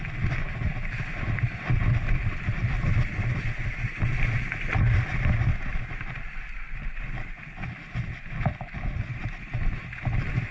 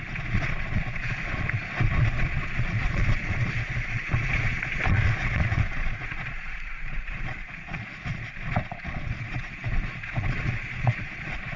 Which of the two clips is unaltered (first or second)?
first